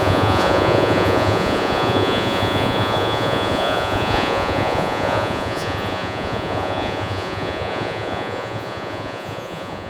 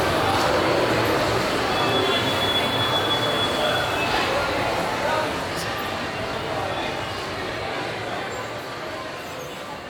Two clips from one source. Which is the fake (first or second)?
first